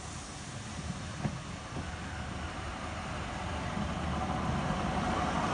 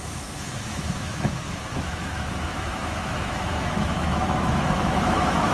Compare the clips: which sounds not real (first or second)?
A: second